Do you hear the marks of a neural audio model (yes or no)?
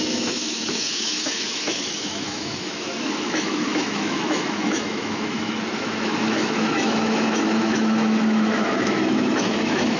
yes